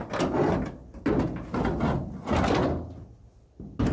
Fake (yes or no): no